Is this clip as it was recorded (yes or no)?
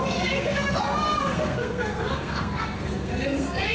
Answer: no